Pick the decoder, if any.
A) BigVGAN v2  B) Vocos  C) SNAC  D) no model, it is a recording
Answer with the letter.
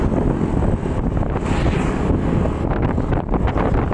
D